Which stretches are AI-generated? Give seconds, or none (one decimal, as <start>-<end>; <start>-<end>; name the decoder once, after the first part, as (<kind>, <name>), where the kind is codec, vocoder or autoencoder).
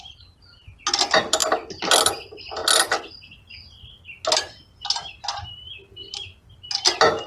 none